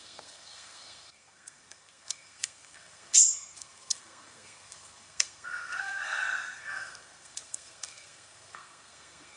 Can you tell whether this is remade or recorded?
remade